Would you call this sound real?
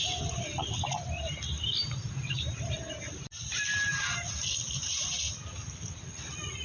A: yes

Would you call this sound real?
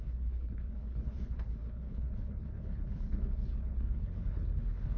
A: no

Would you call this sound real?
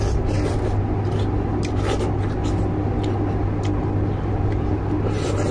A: yes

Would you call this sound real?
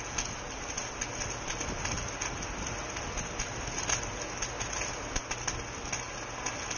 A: yes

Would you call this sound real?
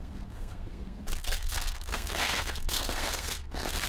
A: no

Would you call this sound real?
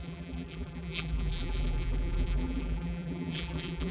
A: no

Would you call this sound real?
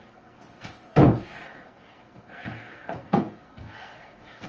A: no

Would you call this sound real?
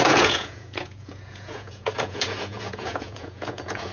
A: no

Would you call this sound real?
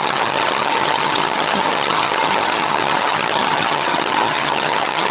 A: no